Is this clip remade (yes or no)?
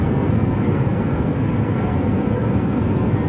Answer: yes